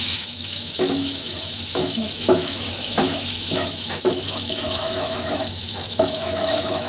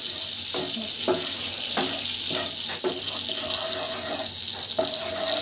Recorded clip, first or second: second